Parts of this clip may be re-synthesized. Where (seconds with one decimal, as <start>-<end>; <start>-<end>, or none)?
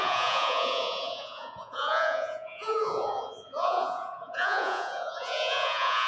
0.0-6.1